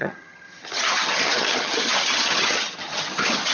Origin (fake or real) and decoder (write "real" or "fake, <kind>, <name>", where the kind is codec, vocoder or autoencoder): fake, vocoder, HiFi-GAN